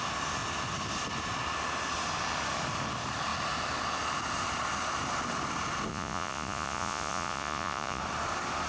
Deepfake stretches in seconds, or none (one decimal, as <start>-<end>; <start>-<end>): 5.9-8.0